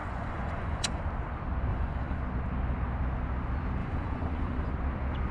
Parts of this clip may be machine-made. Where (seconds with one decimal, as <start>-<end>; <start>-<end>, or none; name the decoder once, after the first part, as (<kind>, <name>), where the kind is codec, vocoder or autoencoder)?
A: 0.0-1.0 (vocoder, Vocos); 1.7-2.2; 3.8-4.7

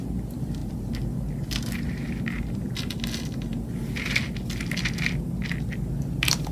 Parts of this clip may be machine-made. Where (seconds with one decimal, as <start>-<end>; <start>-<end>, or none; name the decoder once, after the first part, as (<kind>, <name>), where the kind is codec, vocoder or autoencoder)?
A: none

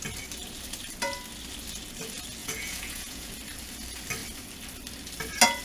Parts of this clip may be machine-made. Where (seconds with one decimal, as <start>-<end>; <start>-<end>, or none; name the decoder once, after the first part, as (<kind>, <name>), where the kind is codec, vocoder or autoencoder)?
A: 2.4-3.3 (vocoder, Vocos)

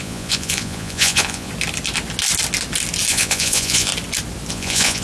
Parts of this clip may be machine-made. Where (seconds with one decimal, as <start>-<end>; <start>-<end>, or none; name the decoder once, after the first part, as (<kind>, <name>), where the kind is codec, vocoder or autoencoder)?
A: 0.0-1.5 (vocoder, Vocos); 3.1-3.9; 4.5-5.0

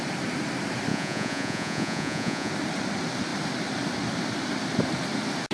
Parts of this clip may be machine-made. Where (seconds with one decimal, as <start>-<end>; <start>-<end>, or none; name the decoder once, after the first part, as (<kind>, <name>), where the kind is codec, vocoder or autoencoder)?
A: 0.9-2.5 (vocoder, Vocos)

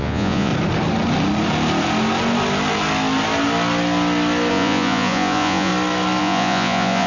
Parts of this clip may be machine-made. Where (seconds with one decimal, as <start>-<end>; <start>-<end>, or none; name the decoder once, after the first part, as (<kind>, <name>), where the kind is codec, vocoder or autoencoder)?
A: 0.0-0.5 (vocoder, Vocos); 4.5-5.7; 6.2-7.1